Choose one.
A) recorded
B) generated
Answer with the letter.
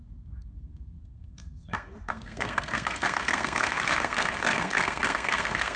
B